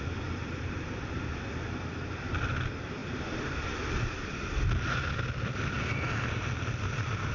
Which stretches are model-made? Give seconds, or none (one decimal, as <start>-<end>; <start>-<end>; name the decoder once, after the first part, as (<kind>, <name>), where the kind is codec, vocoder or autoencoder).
none